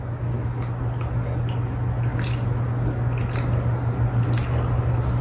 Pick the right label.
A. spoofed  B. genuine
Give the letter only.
B